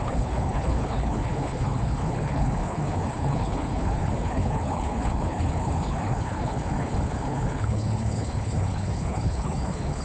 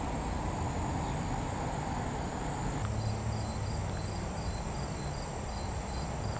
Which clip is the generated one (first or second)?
first